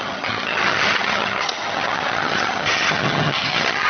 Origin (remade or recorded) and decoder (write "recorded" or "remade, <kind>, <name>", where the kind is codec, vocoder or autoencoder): remade, vocoder, HiFi-GAN